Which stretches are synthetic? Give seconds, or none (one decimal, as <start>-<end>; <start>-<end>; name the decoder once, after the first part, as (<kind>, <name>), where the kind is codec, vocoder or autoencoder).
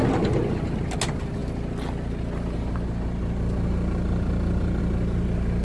none